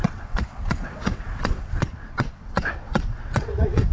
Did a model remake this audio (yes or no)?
yes